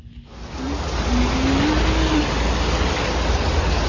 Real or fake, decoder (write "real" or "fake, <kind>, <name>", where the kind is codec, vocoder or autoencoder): real